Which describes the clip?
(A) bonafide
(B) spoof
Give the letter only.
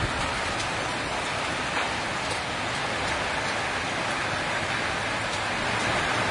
A